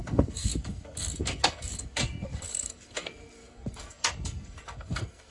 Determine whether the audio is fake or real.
fake